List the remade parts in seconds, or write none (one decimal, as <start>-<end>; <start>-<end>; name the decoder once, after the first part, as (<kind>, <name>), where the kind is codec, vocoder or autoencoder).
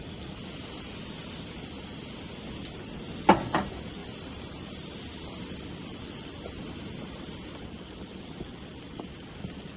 none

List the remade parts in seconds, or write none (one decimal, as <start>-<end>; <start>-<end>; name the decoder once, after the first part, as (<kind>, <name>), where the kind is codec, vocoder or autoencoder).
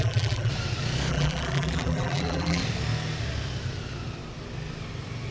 0.0-0.5 (vocoder, BigVGAN v2); 1.1-2.6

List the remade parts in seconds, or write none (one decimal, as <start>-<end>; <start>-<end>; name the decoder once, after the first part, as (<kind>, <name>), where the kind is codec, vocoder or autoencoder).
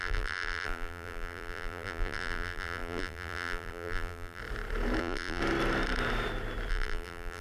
0.0-4.4 (vocoder, BigVGAN v2); 5.0-5.4; 6.7-7.4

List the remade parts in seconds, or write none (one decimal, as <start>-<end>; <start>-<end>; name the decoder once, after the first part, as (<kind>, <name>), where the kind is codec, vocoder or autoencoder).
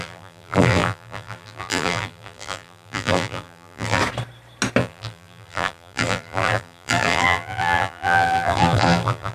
0.0-4.0 (vocoder, BigVGAN v2); 4.8-9.3